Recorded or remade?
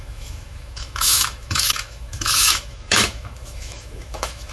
remade